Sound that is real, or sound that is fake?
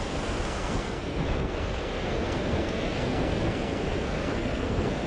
fake